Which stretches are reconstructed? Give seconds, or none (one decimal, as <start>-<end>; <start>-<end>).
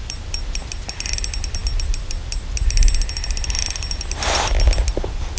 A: none